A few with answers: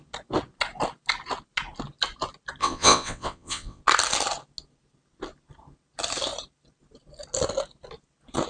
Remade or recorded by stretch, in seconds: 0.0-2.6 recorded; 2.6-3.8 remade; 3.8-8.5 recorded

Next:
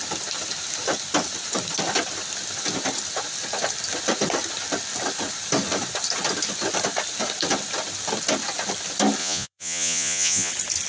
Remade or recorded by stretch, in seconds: 0.0-9.2 recorded; 9.2-10.5 remade; 10.5-10.9 recorded

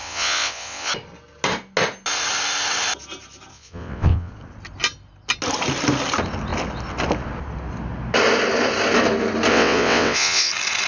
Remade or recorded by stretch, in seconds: 0.0-0.9 remade; 0.9-3.5 recorded; 3.5-4.3 remade; 4.3-9.5 recorded; 9.5-10.5 remade; 10.5-10.9 recorded

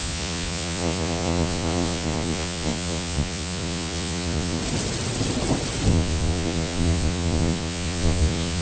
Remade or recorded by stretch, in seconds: 0.0-4.6 remade; 4.6-5.9 recorded; 5.9-8.6 remade

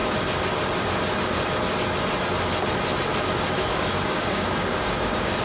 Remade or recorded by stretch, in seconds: 0.0-3.2 recorded; 3.2-5.4 remade

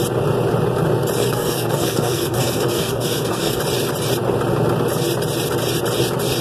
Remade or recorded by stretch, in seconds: 0.0-1.2 recorded; 1.2-3.6 remade; 3.6-6.4 recorded